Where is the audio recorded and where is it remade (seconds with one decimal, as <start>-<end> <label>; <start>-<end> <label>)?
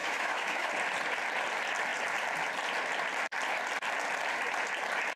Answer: 0.0-0.7 remade; 0.7-5.2 recorded